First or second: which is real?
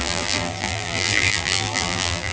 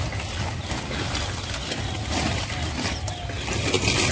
second